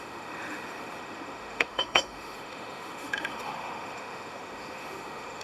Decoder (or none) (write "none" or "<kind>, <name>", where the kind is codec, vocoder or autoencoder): autoencoder, DAC-VAE